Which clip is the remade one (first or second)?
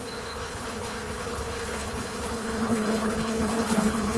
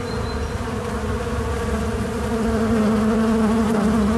first